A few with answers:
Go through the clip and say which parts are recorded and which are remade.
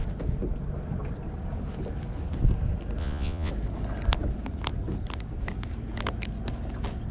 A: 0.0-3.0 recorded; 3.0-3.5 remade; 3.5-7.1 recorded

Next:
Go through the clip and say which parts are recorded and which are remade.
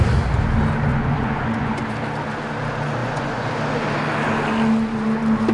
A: 0.0-0.9 recorded; 0.9-1.8 remade; 1.8-3.0 recorded; 3.0-3.5 remade; 3.5-5.5 recorded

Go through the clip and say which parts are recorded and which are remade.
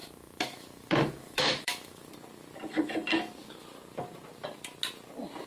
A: 0.0-2.1 remade; 2.1-5.5 recorded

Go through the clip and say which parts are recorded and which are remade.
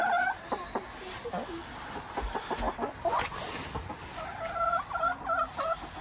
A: 0.0-6.0 recorded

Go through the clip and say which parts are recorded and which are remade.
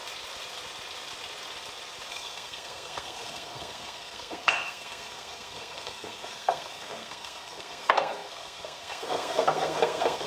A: 0.0-2.1 recorded; 2.1-10.3 remade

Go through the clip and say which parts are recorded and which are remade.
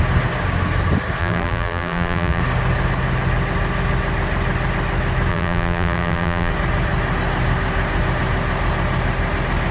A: 0.0-1.2 recorded; 1.2-2.4 remade; 2.4-5.3 recorded; 5.3-6.5 remade; 6.5-9.7 recorded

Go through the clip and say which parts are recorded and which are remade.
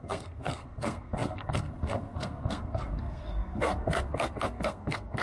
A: 0.0-5.2 remade